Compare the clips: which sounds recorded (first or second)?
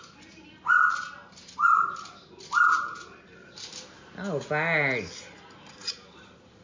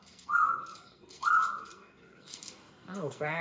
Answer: first